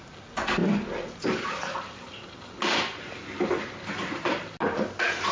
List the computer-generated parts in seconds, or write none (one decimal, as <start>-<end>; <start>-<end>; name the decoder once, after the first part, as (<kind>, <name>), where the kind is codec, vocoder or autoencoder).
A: none